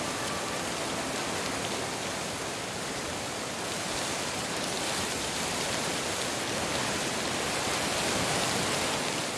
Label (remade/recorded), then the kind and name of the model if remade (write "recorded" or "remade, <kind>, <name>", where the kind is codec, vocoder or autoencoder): recorded